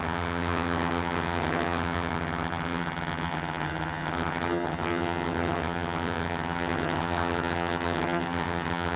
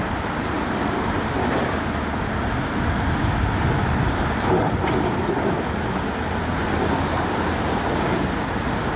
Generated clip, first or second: first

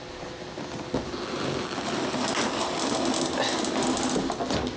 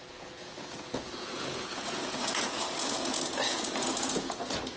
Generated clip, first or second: second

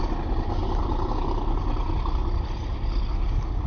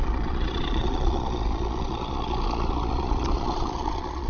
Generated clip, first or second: second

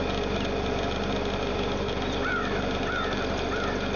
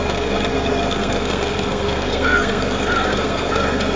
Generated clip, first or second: second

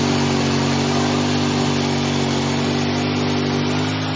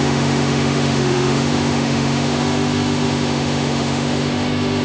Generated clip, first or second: second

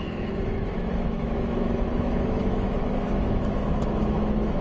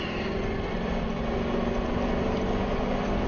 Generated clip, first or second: first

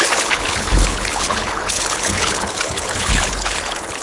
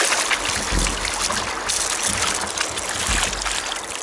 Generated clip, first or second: first